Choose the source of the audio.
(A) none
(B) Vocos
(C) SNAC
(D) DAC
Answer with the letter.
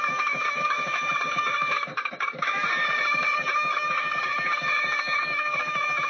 D